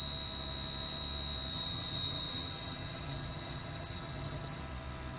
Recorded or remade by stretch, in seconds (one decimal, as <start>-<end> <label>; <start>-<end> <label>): 0.0-1.5 recorded; 1.5-4.6 remade; 4.6-5.2 recorded